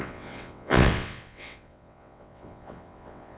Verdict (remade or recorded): remade